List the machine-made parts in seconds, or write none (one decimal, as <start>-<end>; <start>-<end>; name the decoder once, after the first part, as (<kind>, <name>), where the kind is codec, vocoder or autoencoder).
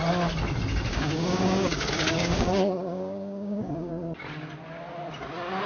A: 0.9-3.9 (codec, DAC)